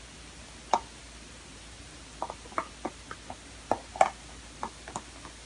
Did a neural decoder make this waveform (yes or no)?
no